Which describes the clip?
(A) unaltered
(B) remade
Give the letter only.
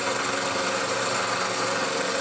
A